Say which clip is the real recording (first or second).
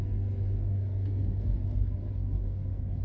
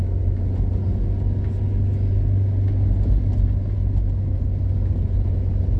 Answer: second